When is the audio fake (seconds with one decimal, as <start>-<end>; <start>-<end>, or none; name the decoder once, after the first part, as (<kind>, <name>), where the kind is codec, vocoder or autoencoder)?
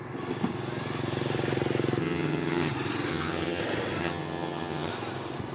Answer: 2.0-2.7 (vocoder, HiFi-GAN); 3.1-3.6; 4.0-4.9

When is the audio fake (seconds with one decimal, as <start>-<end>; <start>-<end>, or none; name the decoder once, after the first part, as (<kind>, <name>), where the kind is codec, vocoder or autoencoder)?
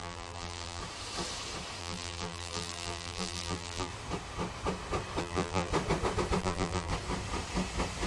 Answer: 0.0-0.8 (vocoder, BigVGAN v2); 1.8-3.9; 5.2-5.7; 6.4-6.9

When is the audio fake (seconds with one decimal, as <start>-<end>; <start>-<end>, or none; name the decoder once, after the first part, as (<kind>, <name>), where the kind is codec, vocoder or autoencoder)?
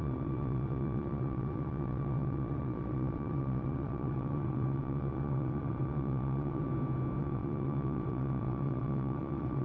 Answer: 0.0-6.7 (vocoder, WaveNeXt); 7.2-9.6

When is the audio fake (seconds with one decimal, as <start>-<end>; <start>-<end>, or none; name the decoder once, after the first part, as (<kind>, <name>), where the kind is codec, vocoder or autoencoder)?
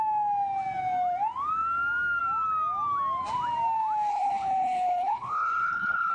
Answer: 4.1-6.1 (codec, HILCodec)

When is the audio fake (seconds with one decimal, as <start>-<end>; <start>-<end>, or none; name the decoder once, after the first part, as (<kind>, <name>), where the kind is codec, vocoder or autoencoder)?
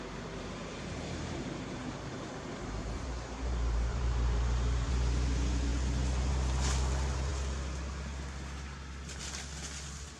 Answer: 0.6-4.9 (vocoder, BigVGAN v2)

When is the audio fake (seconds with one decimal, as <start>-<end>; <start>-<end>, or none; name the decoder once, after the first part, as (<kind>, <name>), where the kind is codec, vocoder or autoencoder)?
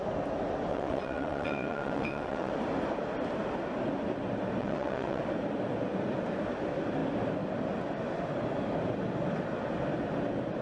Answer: 0.7-2.5 (vocoder, WaveNeXt); 4.6-5.2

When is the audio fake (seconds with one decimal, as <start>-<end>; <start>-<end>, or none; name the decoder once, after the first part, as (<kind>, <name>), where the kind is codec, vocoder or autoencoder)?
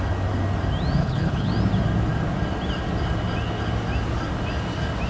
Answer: 1.0-1.5 (codec, HILCodec)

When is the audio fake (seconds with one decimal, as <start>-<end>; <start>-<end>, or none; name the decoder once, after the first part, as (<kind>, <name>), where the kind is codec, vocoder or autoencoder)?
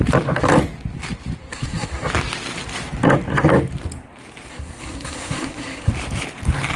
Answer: 1.4-2.1 (codec, SNAC); 4.5-5.9